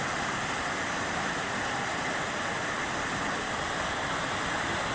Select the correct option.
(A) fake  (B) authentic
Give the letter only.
B